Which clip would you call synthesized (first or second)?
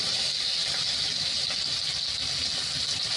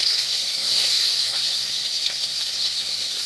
second